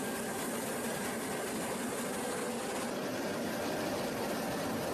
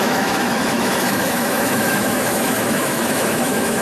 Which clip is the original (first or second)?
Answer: first